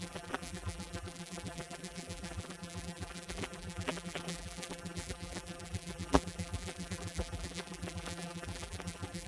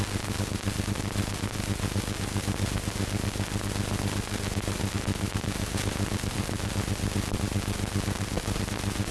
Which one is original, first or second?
second